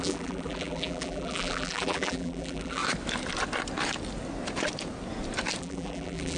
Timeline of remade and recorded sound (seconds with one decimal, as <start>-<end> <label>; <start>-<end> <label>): 0.0-2.8 remade; 2.8-5.6 recorded; 5.6-6.4 remade